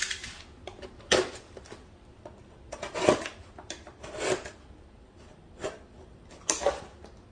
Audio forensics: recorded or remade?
recorded